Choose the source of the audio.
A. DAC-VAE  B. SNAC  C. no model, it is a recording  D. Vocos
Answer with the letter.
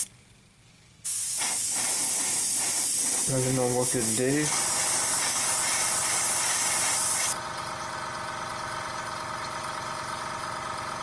C